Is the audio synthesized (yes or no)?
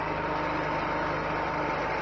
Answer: no